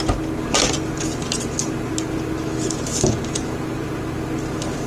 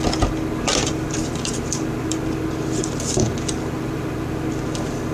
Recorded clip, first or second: first